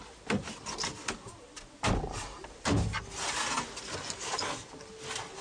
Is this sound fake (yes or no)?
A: no